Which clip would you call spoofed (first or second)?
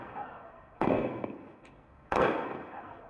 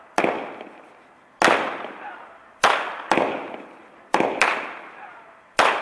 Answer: first